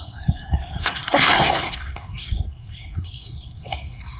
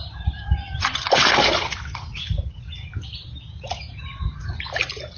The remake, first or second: first